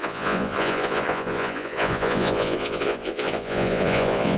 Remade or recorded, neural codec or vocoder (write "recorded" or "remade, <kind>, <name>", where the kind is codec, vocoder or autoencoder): remade, vocoder, Vocos